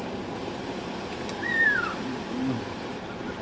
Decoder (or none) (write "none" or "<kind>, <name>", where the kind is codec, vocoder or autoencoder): none